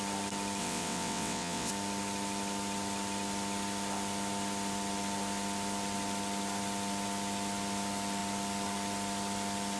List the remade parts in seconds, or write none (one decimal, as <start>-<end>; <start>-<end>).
0.6-1.7